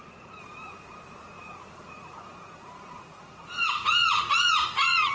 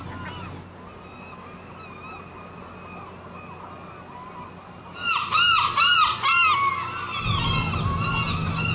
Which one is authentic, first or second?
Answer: second